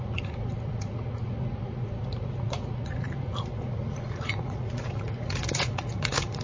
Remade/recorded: remade